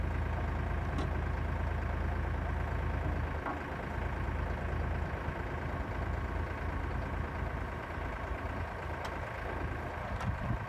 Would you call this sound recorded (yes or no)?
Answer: yes